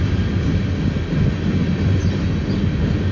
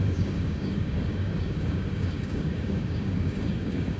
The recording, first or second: first